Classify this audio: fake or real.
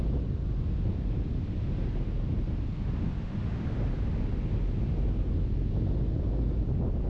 real